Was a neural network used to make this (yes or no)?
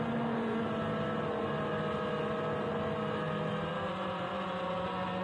no